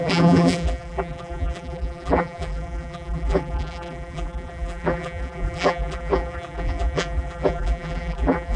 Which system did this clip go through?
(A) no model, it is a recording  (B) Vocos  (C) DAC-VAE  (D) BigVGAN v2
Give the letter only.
D